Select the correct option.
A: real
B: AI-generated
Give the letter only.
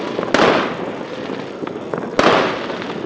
A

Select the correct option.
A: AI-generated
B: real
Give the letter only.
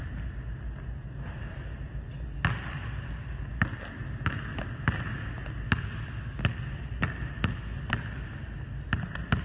B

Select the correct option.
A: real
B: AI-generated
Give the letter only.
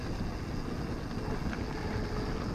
A